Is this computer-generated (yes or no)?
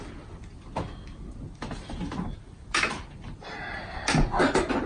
no